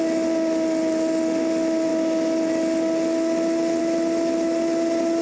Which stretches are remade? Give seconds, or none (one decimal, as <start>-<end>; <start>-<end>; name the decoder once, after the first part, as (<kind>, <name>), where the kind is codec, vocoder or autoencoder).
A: none